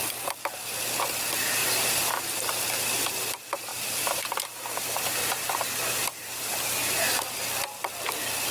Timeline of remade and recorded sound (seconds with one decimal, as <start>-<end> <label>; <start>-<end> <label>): 0.0-1.6 recorded; 1.6-2.4 remade; 2.4-3.7 recorded; 3.7-7.1 remade; 7.1-8.5 recorded